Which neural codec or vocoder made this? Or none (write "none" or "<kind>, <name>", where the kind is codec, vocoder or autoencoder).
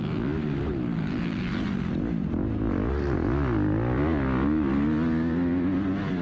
none